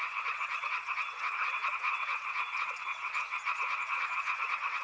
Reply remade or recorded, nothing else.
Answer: remade